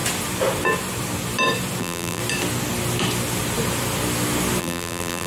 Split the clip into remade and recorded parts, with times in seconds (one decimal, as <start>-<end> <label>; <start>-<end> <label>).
0.0-1.8 recorded; 1.8-2.2 remade; 2.2-4.6 recorded; 4.6-5.3 remade